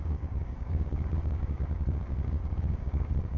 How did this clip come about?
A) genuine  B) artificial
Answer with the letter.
B